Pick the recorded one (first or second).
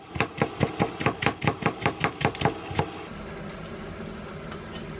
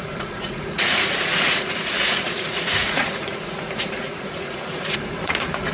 first